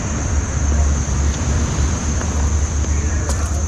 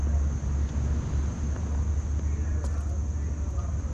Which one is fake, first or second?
first